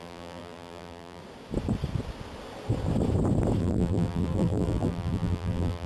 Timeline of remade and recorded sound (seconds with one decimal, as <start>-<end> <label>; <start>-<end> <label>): 0.0-1.2 remade; 1.2-3.6 recorded; 3.6-5.9 remade